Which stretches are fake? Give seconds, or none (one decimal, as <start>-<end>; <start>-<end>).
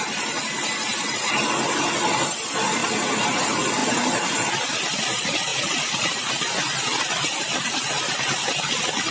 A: 5.5-6.3